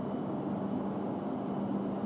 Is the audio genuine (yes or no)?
yes